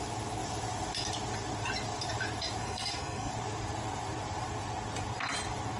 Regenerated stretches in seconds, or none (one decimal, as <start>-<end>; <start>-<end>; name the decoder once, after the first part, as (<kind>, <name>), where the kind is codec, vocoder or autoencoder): 2.6-3.3 (codec, SNAC)